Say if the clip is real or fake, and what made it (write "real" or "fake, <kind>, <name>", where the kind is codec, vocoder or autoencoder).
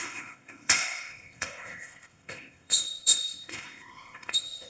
fake, codec, ZipCodec